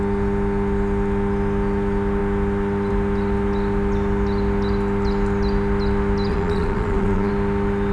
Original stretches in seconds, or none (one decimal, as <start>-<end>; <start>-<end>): 0.0-6.3; 7.3-7.9